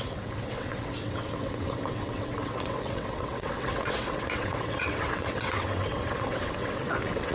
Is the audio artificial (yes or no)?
yes